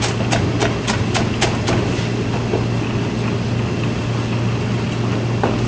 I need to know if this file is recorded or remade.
recorded